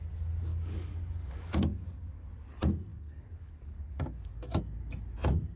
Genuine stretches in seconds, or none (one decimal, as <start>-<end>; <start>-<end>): 0.0-0.5; 2.3-2.9; 4.5-5.6